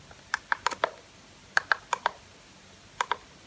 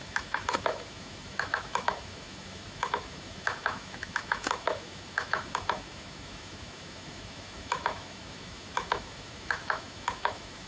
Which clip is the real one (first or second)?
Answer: first